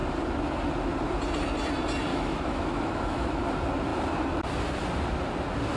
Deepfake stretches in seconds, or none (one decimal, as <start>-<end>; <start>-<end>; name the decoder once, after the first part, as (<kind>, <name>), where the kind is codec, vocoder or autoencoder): 2.1-3.4 (autoencoder, DAC-VAE)